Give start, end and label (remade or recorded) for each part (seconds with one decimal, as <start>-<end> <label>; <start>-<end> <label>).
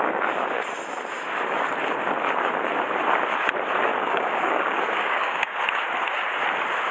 0.0-3.9 recorded; 3.9-5.6 remade; 5.6-6.9 recorded